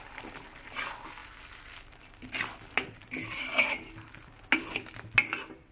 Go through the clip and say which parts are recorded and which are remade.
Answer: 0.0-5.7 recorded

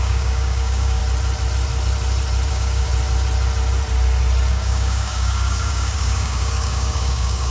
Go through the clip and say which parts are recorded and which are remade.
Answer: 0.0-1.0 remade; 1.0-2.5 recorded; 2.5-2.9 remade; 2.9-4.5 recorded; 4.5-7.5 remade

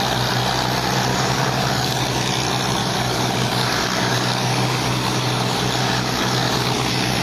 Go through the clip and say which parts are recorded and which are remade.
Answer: 0.0-1.1 recorded; 1.1-2.3 remade; 2.3-2.8 recorded; 2.8-7.2 remade

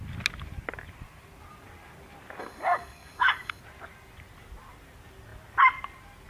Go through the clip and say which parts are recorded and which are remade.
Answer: 0.0-2.4 recorded; 2.4-3.6 remade; 3.6-6.3 recorded

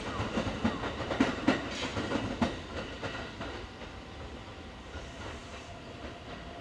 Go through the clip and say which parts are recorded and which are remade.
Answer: 0.0-6.6 recorded